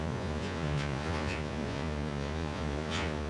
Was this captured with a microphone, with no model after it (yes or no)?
no